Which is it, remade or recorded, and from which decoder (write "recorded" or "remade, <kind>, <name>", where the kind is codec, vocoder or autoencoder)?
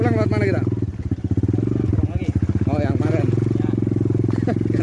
recorded